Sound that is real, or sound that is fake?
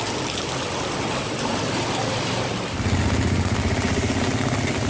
real